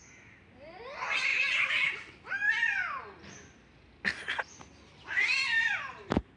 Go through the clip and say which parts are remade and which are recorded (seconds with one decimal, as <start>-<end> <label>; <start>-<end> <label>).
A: 0.0-6.4 recorded